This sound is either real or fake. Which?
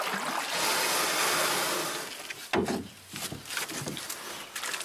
real